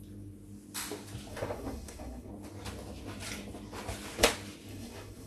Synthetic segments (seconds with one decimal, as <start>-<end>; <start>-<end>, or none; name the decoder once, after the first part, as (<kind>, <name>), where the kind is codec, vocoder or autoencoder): 1.3-2.3 (codec, SNAC); 4.7-5.3